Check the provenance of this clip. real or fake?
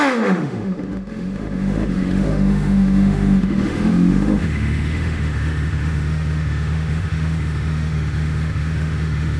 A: fake